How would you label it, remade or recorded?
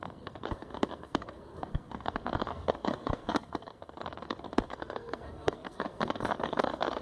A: remade